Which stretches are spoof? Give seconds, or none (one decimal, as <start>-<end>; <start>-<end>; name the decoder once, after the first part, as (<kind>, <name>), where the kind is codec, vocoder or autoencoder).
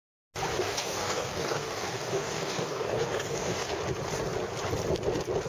0.5-3.8 (codec, DAC)